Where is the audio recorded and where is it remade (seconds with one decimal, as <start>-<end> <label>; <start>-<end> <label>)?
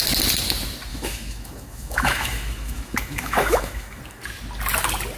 0.0-0.9 recorded; 0.9-4.0 remade; 4.0-5.2 recorded